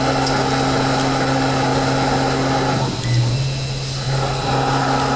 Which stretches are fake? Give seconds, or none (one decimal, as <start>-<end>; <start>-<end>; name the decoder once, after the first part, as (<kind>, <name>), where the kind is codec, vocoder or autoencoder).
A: none